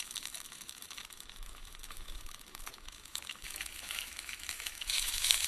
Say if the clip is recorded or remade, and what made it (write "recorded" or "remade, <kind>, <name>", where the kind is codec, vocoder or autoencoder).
remade, autoencoder, DAC-VAE